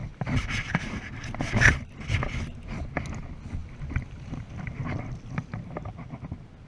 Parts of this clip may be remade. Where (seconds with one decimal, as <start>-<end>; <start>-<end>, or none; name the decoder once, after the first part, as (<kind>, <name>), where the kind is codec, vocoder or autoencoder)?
0.0-2.8 (vocoder, BigVGAN v2)